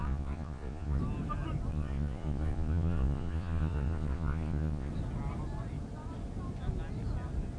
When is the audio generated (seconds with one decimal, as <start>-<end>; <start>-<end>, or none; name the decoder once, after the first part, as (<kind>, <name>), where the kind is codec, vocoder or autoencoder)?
0.0-1.0 (vocoder, Vocos); 1.7-4.9